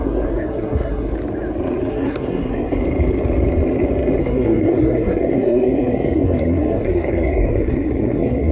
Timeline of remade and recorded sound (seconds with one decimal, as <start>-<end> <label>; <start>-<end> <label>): 0.0-1.1 remade; 1.1-1.9 recorded; 1.9-2.8 remade; 2.8-4.2 recorded; 4.2-8.5 remade